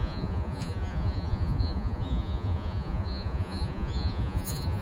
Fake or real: fake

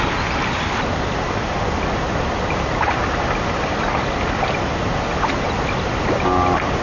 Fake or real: real